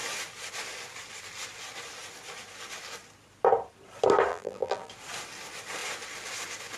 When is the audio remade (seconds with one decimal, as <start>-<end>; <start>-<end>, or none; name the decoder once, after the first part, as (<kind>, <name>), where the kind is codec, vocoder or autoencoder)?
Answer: 4.3-4.9 (vocoder, BigVGAN v2)

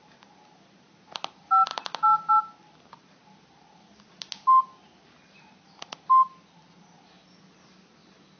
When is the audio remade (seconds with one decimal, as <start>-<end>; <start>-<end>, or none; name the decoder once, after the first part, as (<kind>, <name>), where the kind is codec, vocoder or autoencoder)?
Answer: none

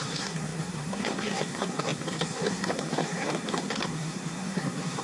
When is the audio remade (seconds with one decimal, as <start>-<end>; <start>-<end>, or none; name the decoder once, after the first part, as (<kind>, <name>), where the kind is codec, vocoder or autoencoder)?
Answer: 0.0-5.0 (codec, SNAC)

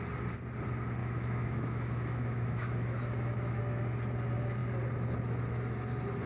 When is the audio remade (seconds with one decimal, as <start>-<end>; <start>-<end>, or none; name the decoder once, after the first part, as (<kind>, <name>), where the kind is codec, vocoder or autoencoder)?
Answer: 1.0-3.6 (autoencoder, DAC-VAE)

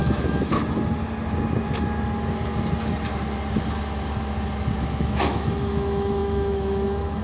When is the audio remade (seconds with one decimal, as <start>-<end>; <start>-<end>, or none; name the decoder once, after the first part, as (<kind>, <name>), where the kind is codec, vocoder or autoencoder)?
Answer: 0.0-0.6 (autoencoder, DAC-VAE); 4.8-7.2

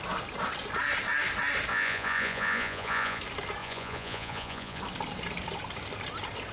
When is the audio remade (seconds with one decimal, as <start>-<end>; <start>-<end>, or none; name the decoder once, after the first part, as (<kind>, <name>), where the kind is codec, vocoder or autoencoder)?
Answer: 1.7-3.2 (vocoder, Vocos); 3.6-4.8

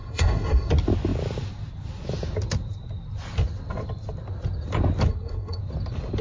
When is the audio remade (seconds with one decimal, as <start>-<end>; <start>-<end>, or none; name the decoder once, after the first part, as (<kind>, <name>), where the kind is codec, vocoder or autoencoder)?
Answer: 0.0-0.7 (codec, SNAC); 5.1-5.6

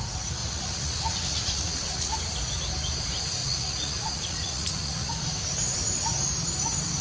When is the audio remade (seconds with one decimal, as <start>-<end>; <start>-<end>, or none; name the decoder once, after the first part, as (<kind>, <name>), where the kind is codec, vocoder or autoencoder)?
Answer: 0.4-2.1 (vocoder, Vocos); 3.4-5.1